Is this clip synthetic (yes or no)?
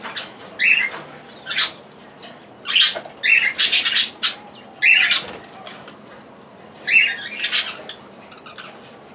no